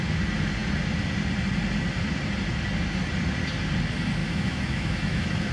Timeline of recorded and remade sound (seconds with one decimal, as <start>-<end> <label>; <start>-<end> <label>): 0.0-4.2 recorded; 4.2-5.5 remade